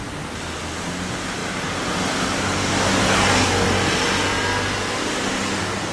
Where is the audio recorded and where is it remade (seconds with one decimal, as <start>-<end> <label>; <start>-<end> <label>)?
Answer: 0.0-5.9 recorded